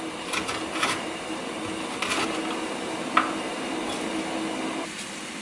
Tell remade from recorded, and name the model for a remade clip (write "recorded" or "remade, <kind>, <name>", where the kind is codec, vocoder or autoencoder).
recorded